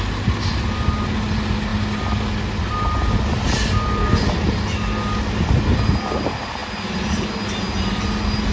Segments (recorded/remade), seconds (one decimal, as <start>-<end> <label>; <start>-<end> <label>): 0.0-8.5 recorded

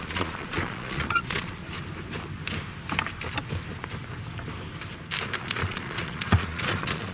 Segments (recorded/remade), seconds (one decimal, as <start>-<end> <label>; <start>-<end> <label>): 0.0-1.6 remade; 1.6-5.4 recorded; 5.4-7.1 remade

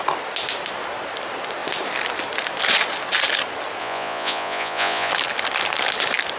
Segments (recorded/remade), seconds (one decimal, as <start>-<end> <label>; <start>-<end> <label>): 0.0-3.8 recorded; 3.8-5.1 remade; 5.1-6.4 recorded